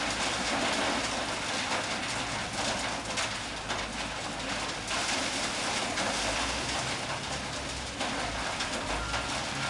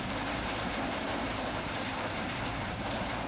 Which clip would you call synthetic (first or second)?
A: second